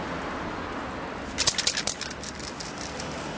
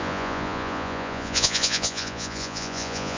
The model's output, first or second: second